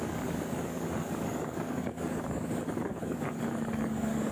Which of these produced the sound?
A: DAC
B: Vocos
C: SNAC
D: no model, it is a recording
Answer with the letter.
A